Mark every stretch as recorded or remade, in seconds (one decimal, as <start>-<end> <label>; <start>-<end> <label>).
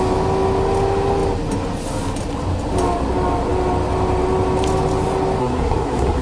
0.0-5.4 recorded; 5.4-6.2 remade